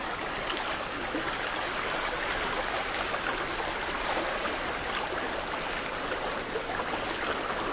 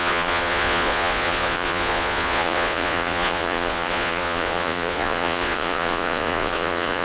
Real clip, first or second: first